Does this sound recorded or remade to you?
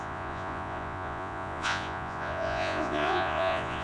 remade